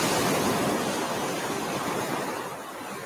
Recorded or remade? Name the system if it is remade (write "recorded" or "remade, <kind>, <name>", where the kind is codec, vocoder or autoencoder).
recorded